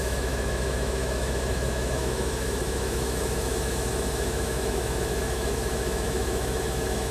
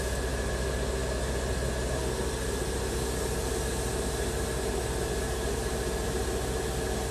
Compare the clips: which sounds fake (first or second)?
first